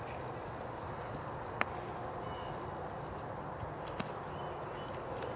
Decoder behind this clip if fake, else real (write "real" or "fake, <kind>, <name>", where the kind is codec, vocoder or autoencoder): real